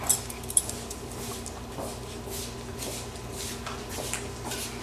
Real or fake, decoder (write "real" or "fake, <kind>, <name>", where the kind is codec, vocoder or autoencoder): real